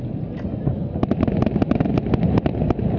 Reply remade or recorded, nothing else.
recorded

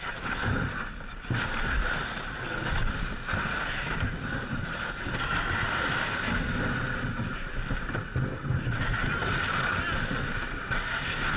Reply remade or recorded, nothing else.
recorded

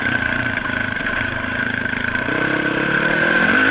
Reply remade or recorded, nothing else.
remade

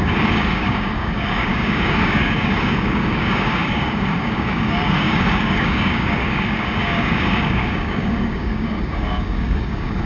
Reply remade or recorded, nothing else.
remade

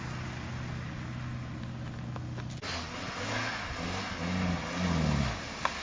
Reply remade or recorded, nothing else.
recorded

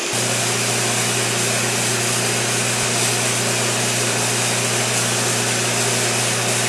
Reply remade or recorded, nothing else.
recorded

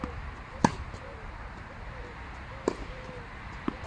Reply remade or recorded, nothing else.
recorded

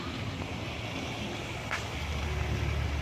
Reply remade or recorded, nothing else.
recorded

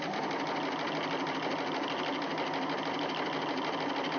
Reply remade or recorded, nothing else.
recorded